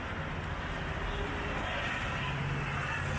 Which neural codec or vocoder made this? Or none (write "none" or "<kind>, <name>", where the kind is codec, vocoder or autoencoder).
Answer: none